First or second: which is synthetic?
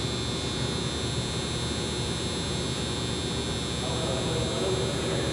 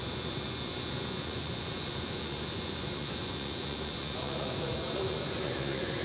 second